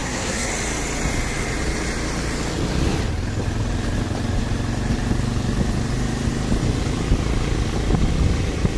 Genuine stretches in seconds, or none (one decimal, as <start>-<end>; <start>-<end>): 0.5-8.8